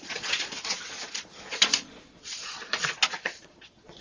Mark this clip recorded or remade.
remade